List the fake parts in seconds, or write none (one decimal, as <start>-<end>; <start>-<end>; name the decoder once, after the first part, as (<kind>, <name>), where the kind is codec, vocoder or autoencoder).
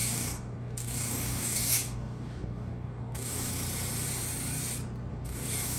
0.0-3.5 (codec, DAC); 5.1-5.8